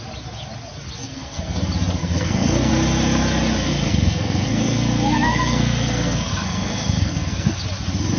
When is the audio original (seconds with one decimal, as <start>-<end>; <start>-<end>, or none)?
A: 0.0-1.0; 1.6-2.0; 2.7-3.7; 7.6-8.2

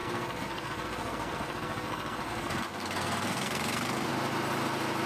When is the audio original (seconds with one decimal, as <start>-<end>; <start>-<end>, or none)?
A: 4.1-5.1

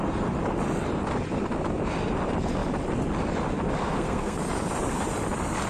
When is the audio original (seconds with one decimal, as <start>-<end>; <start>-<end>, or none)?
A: 0.0-3.8; 4.4-5.7

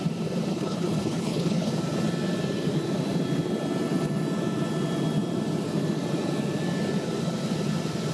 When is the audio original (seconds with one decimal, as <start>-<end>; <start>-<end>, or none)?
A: 0.0-0.5; 1.7-8.1